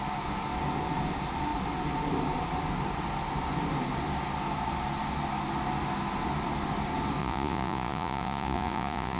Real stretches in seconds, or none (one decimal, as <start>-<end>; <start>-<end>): 0.0-7.2